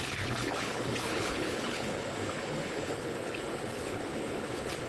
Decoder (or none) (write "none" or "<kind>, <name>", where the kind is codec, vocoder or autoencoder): codec, HILCodec